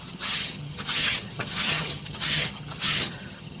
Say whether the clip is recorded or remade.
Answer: remade